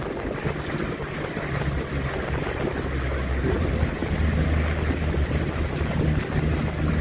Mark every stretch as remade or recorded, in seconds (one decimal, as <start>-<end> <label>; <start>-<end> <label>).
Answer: 0.0-7.0 recorded